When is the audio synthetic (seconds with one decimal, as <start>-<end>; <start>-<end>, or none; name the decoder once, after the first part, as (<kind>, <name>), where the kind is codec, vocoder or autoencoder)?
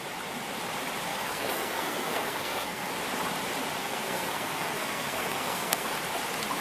1.1-2.9 (codec, SNAC); 3.8-5.9